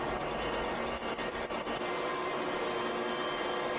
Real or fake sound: real